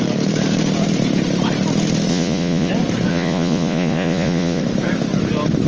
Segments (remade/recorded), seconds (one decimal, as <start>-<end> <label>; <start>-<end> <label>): 0.0-2.1 recorded; 2.1-2.7 remade; 2.7-3.1 recorded; 3.1-4.6 remade; 4.6-5.7 recorded